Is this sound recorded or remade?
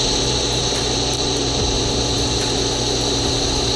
remade